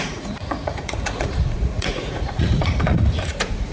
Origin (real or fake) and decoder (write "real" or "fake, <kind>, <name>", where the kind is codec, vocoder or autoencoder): fake, vocoder, Vocos